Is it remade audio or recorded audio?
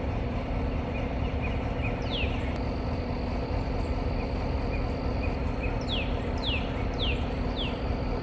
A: recorded